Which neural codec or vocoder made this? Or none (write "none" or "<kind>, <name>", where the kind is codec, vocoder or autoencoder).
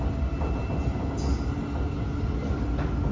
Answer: none